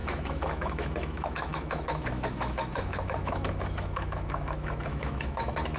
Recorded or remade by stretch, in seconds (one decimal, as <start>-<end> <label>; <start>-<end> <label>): 0.0-5.8 remade

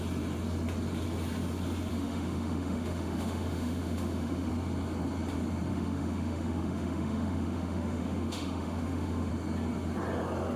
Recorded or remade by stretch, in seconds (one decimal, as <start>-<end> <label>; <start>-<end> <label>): 0.0-1.9 recorded; 1.9-4.5 remade; 4.5-5.7 recorded; 5.7-9.3 remade; 9.3-10.6 recorded

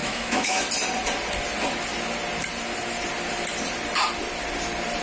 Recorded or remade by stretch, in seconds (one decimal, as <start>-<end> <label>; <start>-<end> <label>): 0.0-0.6 remade; 0.6-5.0 recorded